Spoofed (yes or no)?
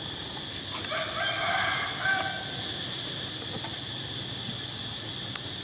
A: no